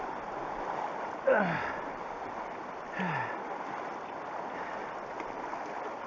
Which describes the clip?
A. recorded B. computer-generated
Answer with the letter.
A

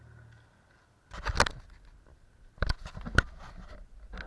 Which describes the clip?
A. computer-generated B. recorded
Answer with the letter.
B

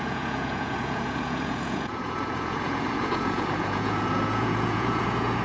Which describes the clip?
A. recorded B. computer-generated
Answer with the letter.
B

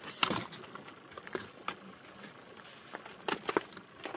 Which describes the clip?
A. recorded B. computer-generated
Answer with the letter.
A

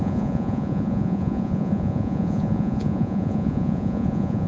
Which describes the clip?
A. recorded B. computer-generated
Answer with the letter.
B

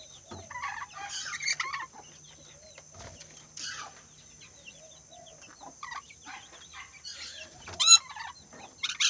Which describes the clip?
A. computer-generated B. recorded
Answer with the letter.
B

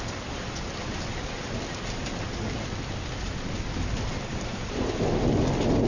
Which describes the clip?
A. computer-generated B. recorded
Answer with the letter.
B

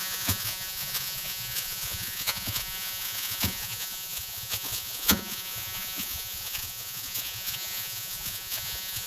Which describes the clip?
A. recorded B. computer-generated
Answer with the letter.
B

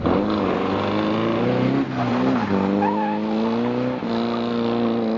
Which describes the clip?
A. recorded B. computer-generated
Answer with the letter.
A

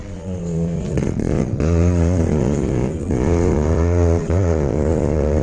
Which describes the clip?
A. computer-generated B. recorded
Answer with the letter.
A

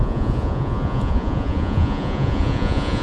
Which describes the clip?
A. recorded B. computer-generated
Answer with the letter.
B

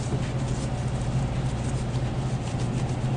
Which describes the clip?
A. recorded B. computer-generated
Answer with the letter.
A